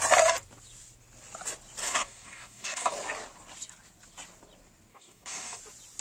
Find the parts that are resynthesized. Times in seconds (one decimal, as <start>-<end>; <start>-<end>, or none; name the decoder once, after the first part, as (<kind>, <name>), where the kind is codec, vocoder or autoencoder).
1.8-2.9 (codec, DAC); 4.9-5.6